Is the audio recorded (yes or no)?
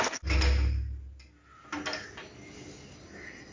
yes